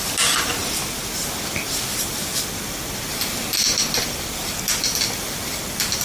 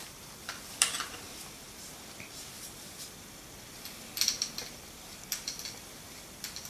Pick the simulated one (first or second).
second